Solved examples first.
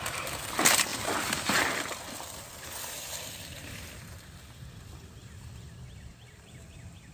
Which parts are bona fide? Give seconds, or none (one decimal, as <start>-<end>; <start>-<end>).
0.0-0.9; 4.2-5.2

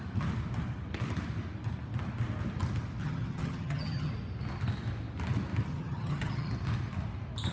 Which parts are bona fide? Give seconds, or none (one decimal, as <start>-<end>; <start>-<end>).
0.0-3.0; 4.1-5.7; 6.5-7.5

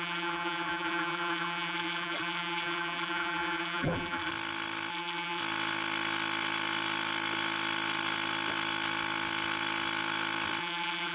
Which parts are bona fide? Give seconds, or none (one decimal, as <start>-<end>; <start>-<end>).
4.3-4.9; 5.4-10.6

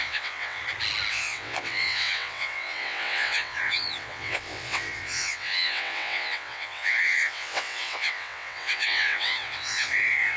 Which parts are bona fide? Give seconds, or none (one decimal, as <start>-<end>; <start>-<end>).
0.6-1.1

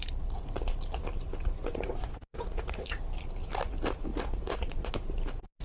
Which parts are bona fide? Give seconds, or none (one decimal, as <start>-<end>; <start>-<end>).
0.0-1.7; 3.0-4.1; 4.9-5.6

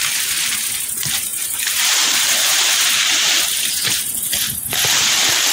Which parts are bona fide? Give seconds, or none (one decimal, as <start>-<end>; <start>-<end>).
0.0-1.3; 4.0-5.5